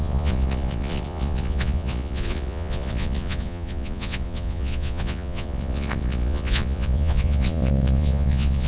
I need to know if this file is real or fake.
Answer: fake